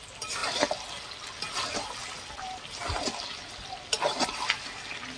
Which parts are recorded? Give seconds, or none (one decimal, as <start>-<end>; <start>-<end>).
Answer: 0.0-5.2